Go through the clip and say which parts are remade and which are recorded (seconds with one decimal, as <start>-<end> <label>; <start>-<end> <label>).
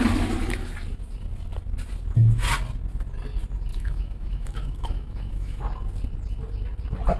0.0-3.7 recorded; 3.7-5.6 remade; 5.6-7.2 recorded